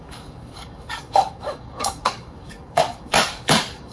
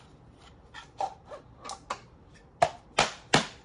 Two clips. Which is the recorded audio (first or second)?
second